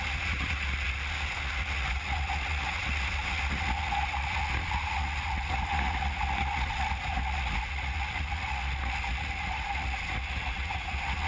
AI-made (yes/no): yes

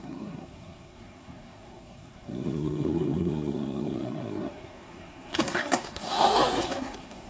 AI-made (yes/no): yes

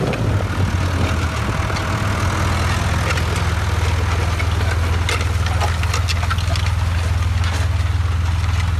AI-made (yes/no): no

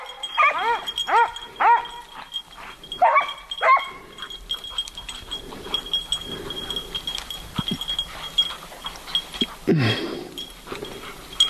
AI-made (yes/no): no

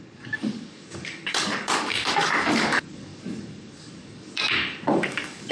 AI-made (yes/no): yes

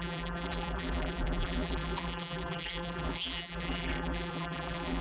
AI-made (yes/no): yes